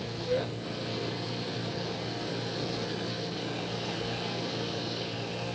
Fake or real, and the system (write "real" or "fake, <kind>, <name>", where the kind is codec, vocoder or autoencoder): fake, codec, SNAC